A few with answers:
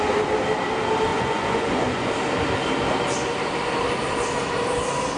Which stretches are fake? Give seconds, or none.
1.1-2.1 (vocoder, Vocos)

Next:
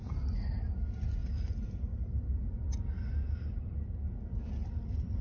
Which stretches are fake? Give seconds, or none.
1.2-3.1 (vocoder, BigVGAN v2)

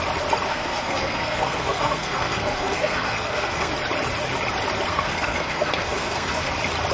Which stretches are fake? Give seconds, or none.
0.5-3.7 (codec, SNAC); 4.9-6.5